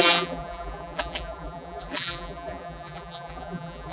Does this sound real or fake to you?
fake